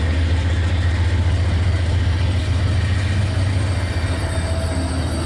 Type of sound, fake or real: real